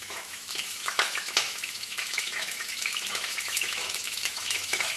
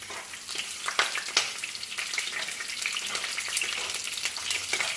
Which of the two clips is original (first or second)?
second